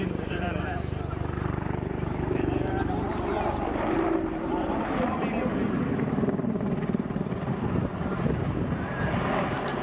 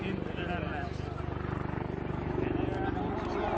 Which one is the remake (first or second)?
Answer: first